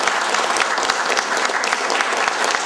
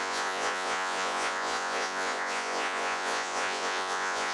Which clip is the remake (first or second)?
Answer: second